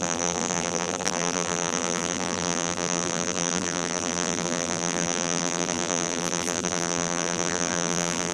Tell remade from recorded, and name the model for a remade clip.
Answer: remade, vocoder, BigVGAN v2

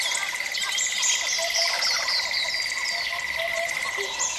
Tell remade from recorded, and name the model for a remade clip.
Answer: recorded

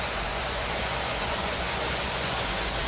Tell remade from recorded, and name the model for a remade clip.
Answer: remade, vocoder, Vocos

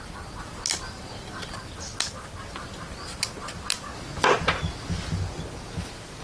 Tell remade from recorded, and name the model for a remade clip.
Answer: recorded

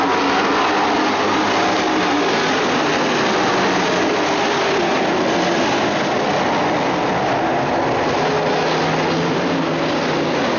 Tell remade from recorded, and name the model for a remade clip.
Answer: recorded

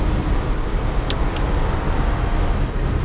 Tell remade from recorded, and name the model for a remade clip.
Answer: recorded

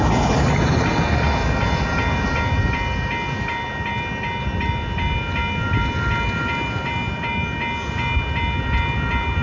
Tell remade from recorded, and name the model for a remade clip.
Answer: recorded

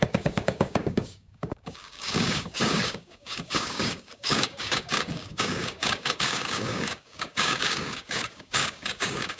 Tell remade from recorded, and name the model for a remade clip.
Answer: remade, codec, DAC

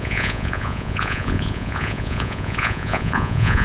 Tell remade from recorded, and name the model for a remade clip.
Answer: remade, vocoder, Vocos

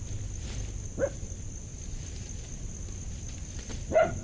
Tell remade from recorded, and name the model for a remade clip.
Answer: recorded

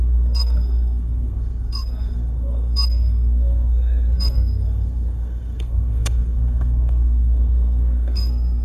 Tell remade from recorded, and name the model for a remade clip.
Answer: remade, codec, SNAC